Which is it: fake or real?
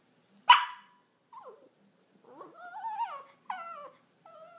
real